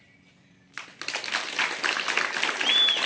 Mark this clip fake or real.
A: real